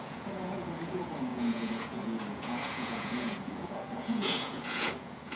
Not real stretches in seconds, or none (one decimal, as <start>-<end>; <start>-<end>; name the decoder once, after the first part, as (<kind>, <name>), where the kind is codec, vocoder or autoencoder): 0.0-5.4 (vocoder, Vocos)